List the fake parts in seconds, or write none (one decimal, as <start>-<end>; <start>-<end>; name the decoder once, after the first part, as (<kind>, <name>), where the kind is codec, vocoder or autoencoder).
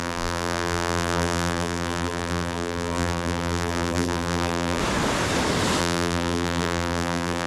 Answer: 0.0-4.8 (vocoder, BigVGAN v2); 5.8-7.5